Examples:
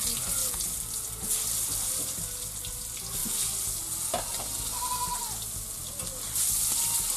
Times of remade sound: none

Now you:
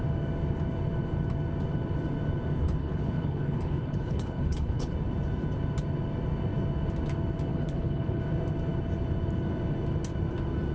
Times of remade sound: 2.8-4.9 (codec, HILCodec); 7.5-8.2

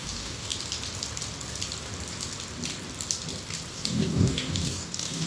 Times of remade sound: 0.0-0.5 (codec, DAC); 3.7-5.3

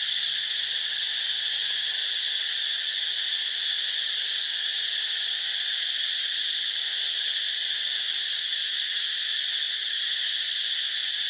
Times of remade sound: none